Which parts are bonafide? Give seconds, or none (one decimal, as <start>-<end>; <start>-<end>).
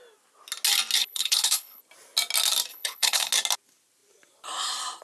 0.0-1.0; 1.8-2.7; 3.3-5.0